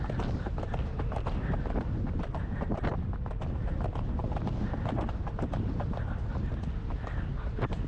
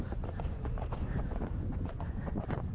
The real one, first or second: first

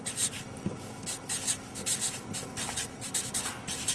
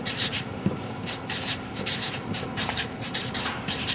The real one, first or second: first